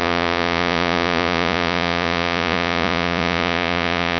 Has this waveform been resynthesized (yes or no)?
yes